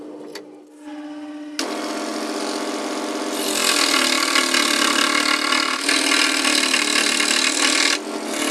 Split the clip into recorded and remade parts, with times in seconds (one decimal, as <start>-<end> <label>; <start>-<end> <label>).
0.0-2.1 recorded; 2.1-2.8 remade; 2.8-8.5 recorded